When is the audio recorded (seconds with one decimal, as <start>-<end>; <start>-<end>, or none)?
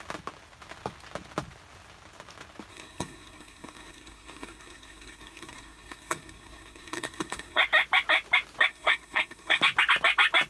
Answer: 0.0-2.7; 7.6-8.7; 9.6-10.5